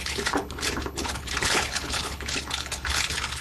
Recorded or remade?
remade